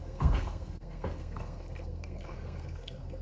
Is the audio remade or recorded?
remade